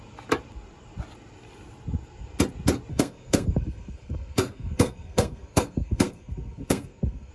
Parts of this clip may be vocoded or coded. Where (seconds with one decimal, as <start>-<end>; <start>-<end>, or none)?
2.9-7.3